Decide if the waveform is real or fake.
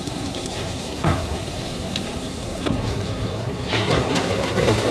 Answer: fake